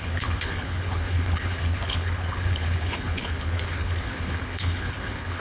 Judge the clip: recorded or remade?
remade